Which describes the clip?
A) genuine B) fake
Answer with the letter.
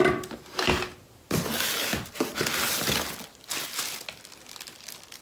A